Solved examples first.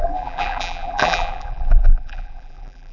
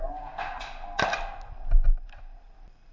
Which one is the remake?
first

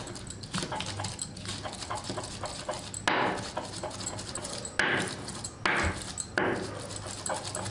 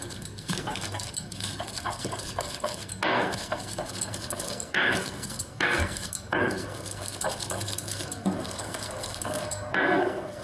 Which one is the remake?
second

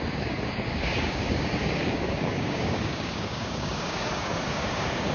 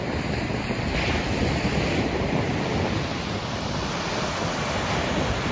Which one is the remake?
first